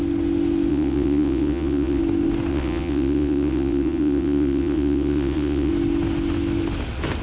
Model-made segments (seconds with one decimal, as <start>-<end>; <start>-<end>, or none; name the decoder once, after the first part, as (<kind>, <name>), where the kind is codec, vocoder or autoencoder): 0.7-2.0 (vocoder, WaveNeXt); 2.5-5.7